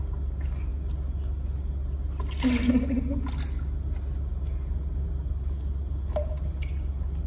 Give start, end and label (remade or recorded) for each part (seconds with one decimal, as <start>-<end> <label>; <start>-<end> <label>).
0.0-7.3 recorded